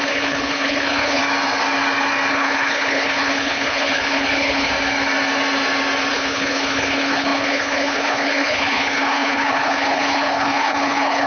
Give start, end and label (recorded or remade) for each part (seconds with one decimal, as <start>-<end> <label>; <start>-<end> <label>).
0.0-1.2 remade; 1.2-2.3 recorded; 2.3-4.7 remade; 4.7-6.1 recorded; 6.1-11.3 remade